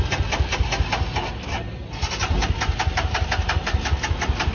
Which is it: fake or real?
real